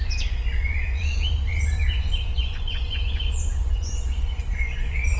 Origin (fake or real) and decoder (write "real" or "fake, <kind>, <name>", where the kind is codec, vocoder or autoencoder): fake, vocoder, Vocos